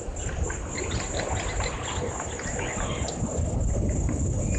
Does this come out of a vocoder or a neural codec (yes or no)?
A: no